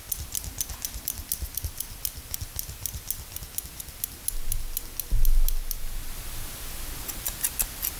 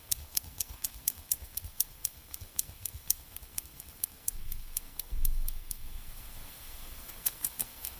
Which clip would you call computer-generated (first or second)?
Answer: second